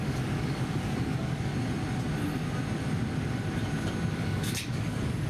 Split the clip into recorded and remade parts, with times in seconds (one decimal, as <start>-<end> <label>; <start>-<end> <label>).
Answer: 0.0-1.5 remade; 1.5-4.1 recorded; 4.1-5.3 remade